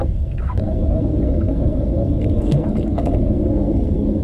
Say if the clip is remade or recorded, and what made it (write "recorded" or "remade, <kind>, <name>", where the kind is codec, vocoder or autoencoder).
remade, codec, SNAC